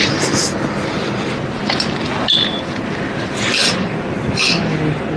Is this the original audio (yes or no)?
yes